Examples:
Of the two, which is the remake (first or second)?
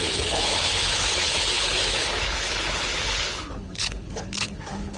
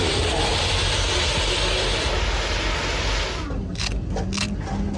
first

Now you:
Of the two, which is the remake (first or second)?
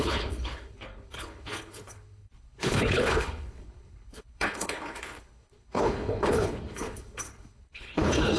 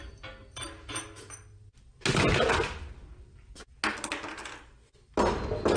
first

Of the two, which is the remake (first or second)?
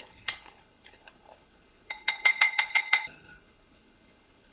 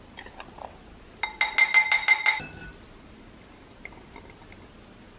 first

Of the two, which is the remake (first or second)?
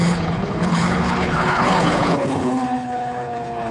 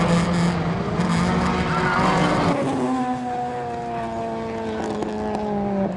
first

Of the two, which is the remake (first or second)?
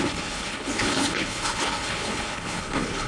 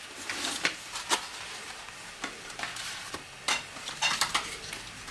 first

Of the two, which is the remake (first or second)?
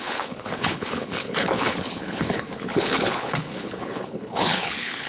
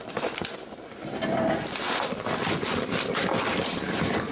first